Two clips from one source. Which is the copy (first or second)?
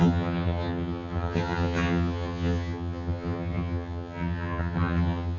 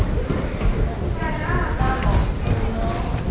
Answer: first